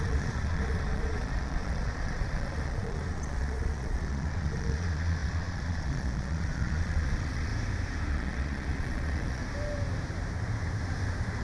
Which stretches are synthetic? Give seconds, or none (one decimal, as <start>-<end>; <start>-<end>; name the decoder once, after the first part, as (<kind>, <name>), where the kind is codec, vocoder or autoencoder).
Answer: 0.0-7.5 (vocoder, Vocos); 8.1-9.4